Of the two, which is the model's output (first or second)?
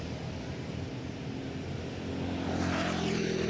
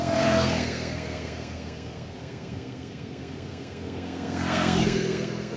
second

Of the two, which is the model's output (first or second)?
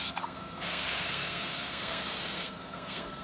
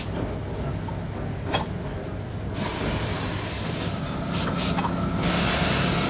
first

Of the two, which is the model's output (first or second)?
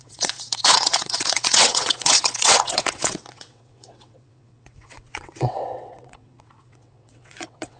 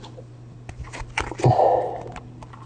first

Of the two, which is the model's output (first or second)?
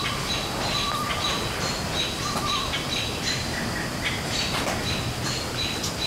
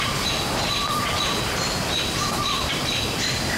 second